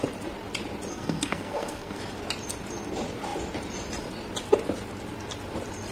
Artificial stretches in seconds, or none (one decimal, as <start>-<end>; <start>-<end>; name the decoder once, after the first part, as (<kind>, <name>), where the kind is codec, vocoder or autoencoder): 0.9-2.0 (codec, SNAC)